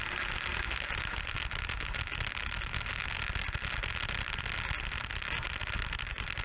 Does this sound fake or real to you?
real